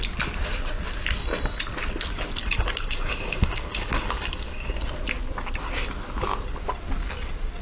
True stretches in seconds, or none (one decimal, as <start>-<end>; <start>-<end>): 0.0-2.4; 4.8-7.6